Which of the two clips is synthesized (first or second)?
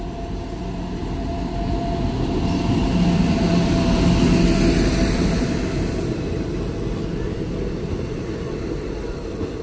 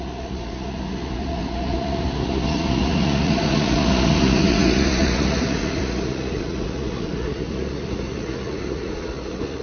second